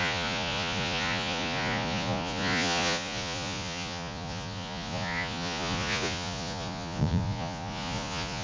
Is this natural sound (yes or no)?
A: no